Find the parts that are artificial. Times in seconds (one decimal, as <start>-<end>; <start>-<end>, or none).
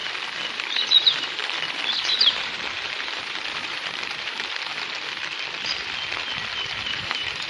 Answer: 0.5-1.4; 2.2-4.7; 6.8-7.5